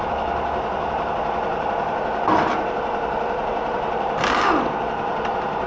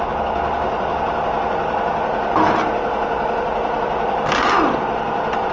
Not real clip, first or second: first